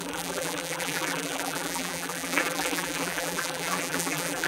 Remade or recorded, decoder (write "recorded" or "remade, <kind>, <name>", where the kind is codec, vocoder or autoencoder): remade, vocoder, BigVGAN v2